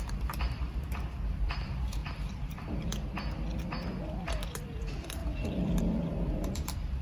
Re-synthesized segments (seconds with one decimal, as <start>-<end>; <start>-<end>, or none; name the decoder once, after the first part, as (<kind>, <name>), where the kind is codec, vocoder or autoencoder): 0.0-2.0 (vocoder, BigVGAN v2); 2.5-2.9; 4.8-7.0